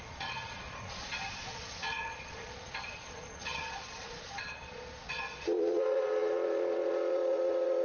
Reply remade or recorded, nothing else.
remade